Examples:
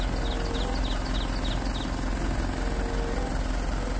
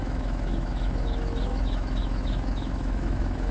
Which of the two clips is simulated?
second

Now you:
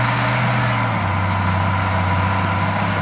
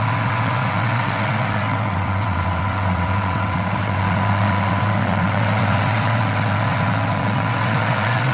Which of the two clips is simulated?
second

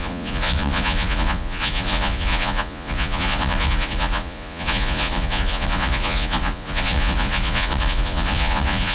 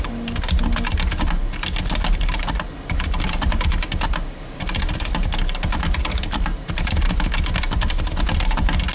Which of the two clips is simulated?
first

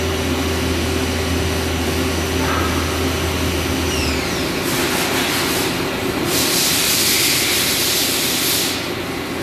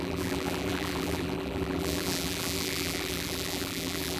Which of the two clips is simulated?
second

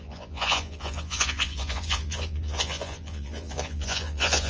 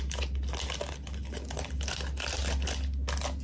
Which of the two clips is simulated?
first